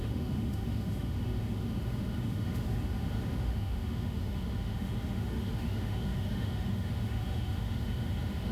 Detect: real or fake fake